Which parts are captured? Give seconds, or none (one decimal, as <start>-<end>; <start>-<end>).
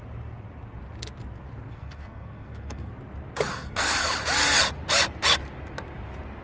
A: 0.0-1.7; 2.9-3.5; 4.1-6.4